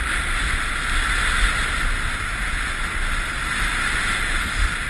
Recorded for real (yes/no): yes